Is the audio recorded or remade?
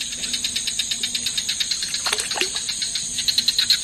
recorded